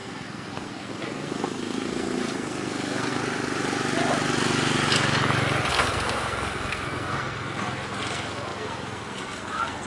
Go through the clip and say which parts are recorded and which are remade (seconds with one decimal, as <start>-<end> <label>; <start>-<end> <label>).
0.0-3.2 remade; 3.2-5.7 recorded; 5.7-9.9 remade